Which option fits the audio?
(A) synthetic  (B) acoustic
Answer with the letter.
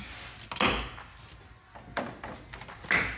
B